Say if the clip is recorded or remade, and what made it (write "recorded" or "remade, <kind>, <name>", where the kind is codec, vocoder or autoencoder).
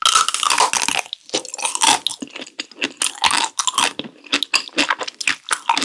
recorded